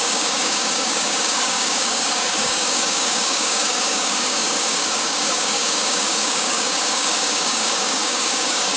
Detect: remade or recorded remade